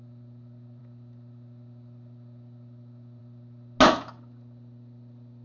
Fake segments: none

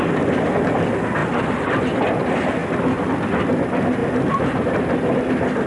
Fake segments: 1.2-1.8 (vocoder, BigVGAN v2); 2.6-3.2; 4.0-4.8